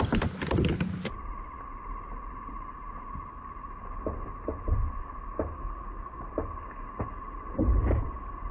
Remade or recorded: recorded